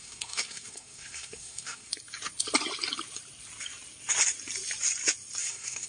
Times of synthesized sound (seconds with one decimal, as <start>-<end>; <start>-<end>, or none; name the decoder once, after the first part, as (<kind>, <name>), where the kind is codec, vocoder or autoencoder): 0.0-1.9 (codec, SNAC); 5.4-5.9